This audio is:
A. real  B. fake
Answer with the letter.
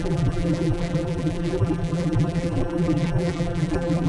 B